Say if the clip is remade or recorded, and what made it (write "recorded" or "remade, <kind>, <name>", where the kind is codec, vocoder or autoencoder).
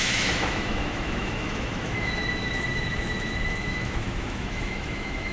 remade, autoencoder, DAC-VAE